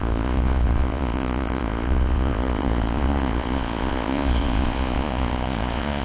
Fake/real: fake